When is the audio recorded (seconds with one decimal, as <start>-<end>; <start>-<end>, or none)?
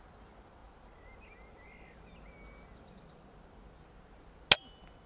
0.0-5.1